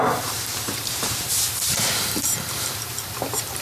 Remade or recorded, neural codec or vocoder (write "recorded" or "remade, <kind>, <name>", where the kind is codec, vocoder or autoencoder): remade, vocoder, BigVGAN v2